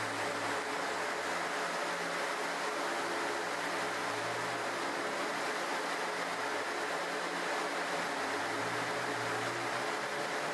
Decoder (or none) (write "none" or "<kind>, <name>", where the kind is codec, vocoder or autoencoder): none